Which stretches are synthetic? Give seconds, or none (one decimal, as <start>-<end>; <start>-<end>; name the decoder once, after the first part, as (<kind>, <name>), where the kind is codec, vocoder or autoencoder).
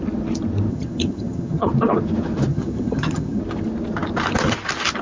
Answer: 0.7-1.7 (vocoder, HiFi-GAN); 2.5-3.4